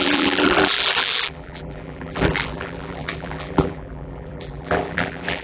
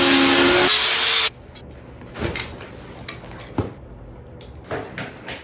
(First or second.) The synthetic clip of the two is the first